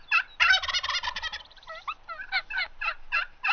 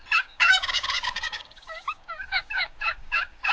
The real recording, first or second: first